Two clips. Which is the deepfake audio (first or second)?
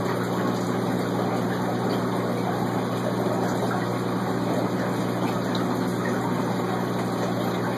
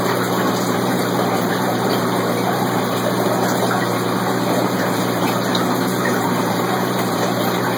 second